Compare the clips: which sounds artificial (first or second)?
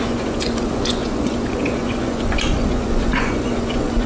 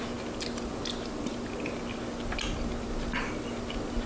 first